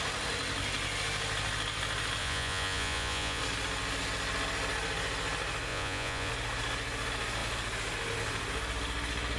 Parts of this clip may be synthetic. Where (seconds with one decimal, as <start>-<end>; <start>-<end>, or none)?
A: 2.2-3.4; 5.7-6.3